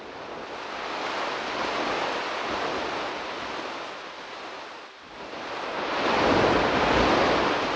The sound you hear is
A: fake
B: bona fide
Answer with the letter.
B